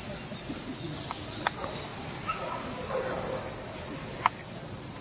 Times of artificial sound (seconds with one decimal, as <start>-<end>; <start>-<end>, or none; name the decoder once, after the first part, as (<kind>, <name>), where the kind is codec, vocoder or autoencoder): none